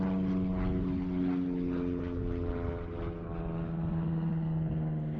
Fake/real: real